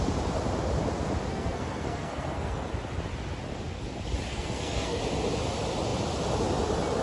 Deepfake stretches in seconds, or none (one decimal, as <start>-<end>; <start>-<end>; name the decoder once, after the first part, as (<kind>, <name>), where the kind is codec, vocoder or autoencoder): 1.3-2.7 (codec, SNAC); 4.3-5.0